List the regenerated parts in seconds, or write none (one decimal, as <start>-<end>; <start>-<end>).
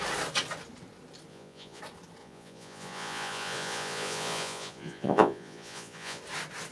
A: 1.3-1.8; 2.2-6.2